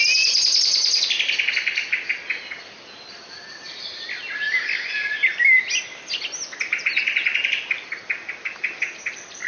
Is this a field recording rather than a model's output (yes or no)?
yes